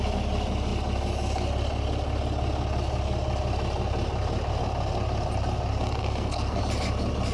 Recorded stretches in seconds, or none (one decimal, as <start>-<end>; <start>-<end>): 0.0-6.0; 6.6-7.3